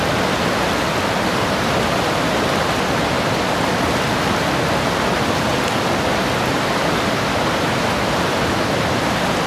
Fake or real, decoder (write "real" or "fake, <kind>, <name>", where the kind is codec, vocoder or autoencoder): real